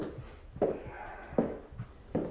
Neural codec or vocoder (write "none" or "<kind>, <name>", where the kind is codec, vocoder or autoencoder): none